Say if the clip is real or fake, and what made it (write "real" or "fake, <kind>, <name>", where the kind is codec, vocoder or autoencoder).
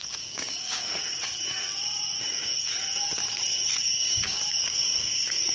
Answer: fake, codec, DAC